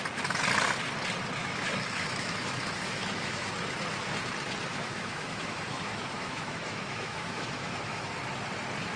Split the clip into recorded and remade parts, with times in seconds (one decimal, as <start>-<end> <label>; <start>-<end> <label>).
0.0-1.4 recorded; 1.4-3.5 remade; 3.5-4.7 recorded; 4.7-8.1 remade; 8.1-9.0 recorded